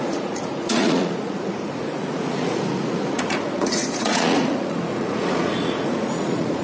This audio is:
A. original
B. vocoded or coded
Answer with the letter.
B